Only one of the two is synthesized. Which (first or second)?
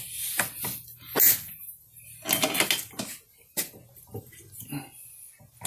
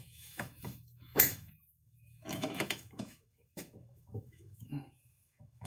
second